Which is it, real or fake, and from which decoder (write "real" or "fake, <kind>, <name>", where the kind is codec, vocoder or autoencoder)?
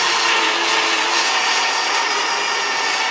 real